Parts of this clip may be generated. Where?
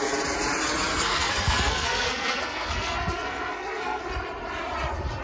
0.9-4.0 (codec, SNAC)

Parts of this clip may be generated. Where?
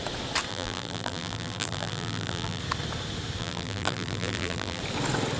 0.5-2.6 (vocoder, BigVGAN v2); 3.4-4.8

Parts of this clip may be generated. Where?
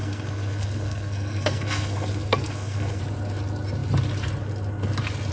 0.0-3.0 (codec, SNAC)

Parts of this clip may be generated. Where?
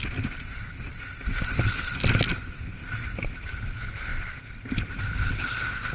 none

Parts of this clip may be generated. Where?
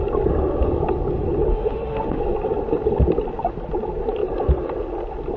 1.5-2.2 (autoencoder, DAC-VAE)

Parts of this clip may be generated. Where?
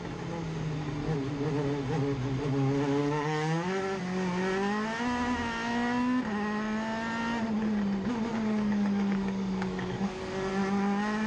3.0-4.0 (codec, DAC); 8.3-10.5